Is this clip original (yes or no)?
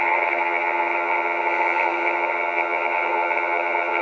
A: no